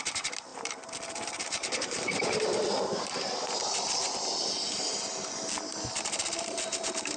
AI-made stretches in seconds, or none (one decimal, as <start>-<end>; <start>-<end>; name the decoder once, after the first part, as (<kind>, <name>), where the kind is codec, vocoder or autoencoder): 0.0-3.6 (vocoder, BigVGAN v2); 6.4-7.2